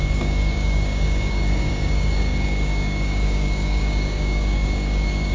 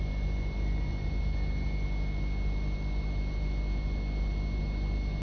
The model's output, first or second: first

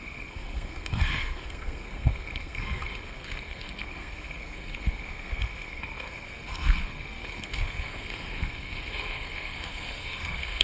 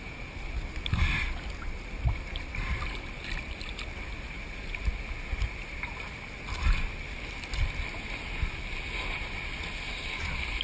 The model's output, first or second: first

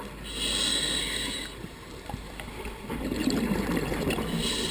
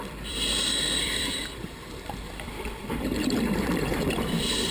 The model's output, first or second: second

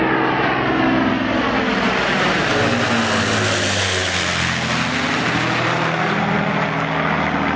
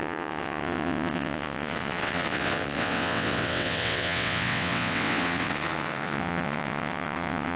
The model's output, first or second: second